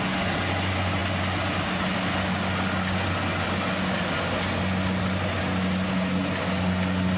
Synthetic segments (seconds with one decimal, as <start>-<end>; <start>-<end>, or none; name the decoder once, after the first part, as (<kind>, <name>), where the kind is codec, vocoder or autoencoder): none